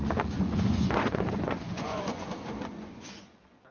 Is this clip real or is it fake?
fake